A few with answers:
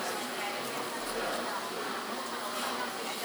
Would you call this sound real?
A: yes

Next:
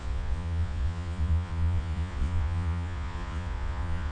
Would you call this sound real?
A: no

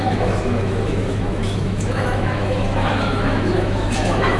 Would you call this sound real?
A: no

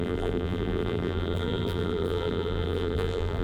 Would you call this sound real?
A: no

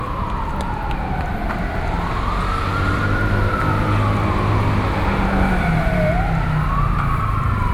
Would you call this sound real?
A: yes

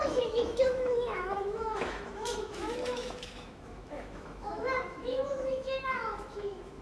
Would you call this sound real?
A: no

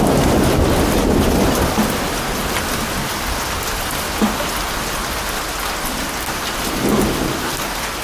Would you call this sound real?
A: yes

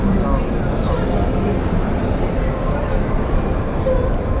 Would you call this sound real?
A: no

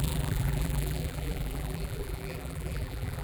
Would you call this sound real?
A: no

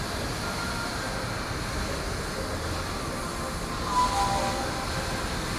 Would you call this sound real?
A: yes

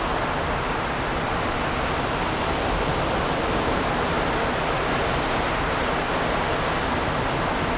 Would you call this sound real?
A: yes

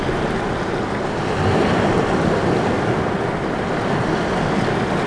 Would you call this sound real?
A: yes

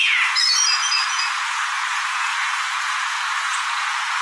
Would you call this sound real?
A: no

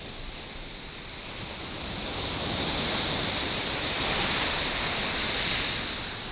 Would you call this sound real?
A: yes